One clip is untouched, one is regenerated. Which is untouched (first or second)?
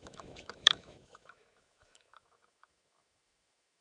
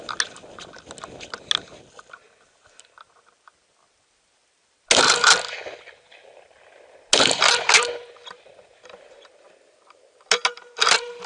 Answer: second